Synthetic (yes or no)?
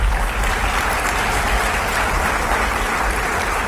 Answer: yes